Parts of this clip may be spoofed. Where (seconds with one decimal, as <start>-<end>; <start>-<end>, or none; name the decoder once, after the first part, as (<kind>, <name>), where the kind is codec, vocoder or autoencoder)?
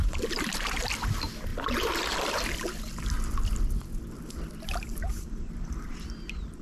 0.0-0.9 (vocoder, BigVGAN v2); 1.5-2.4; 4.9-5.9